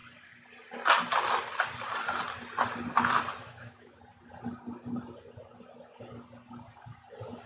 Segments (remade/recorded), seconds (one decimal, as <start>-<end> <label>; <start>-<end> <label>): 0.0-3.4 recorded; 3.4-4.0 remade; 4.0-7.5 recorded